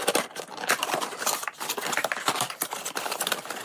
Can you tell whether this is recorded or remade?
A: recorded